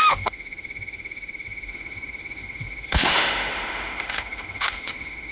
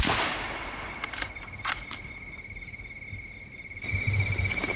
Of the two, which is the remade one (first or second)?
first